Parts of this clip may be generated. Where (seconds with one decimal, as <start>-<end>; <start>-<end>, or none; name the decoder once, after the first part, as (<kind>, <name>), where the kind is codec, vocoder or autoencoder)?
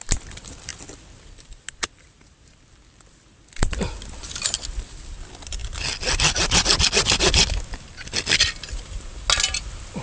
none